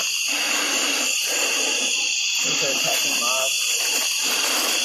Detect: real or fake real